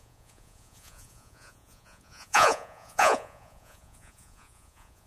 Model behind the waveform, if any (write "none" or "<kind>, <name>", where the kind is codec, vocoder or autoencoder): vocoder, Vocos